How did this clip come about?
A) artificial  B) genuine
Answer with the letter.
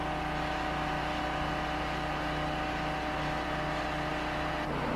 B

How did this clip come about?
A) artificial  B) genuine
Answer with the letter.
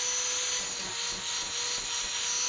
B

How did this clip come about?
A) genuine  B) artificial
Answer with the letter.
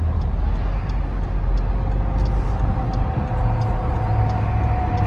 A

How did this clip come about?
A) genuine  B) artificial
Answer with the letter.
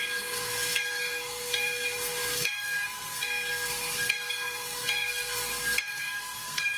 B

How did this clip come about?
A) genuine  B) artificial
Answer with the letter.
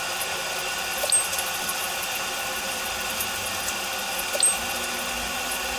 A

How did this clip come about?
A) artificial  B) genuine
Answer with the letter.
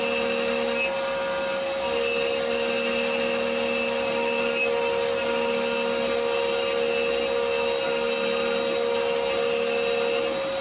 B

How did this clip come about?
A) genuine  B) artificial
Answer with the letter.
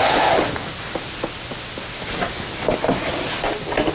A